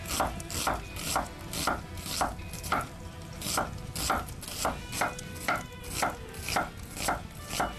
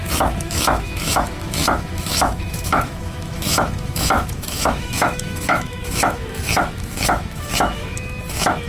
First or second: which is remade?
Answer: second